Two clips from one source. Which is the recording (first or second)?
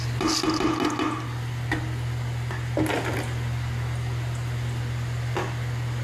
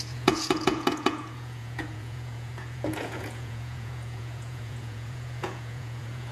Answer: first